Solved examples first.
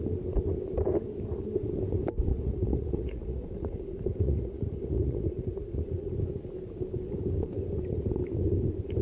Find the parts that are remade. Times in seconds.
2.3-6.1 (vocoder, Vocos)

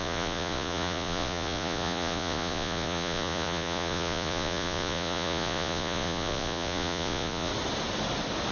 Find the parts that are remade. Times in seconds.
0.0-7.5 (vocoder, Vocos)